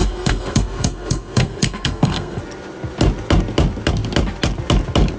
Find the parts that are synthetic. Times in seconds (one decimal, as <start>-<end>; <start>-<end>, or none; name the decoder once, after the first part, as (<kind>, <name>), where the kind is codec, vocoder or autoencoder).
0.0-2.4 (codec, SNAC)